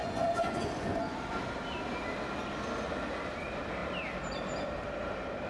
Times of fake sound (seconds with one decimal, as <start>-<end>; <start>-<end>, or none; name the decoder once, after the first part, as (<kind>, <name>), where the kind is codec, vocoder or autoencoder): 0.0-1.4 (vocoder, Vocos)